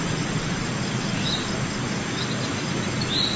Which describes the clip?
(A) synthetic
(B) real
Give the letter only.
B